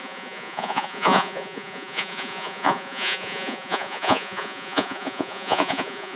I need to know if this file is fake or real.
fake